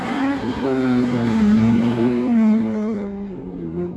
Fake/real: fake